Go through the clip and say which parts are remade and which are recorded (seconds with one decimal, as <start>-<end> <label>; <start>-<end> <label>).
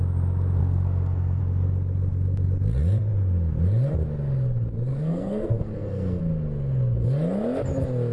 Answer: 0.0-0.6 recorded; 0.6-1.4 remade; 1.4-4.9 recorded; 4.9-6.2 remade; 6.2-8.1 recorded